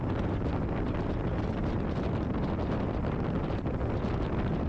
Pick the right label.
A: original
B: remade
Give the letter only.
A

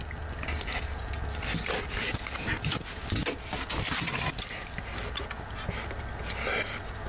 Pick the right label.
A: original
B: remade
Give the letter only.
A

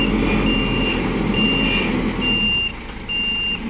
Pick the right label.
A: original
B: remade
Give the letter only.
A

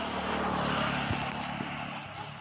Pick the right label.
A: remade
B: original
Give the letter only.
B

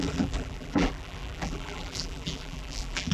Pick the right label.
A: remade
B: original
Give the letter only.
A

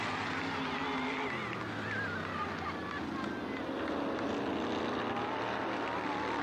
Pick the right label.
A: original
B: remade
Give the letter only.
A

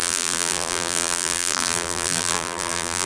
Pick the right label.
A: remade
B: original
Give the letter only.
A